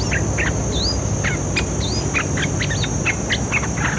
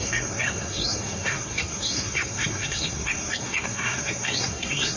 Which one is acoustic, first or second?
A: first